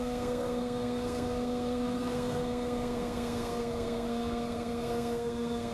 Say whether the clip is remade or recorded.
remade